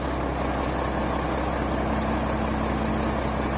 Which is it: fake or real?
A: real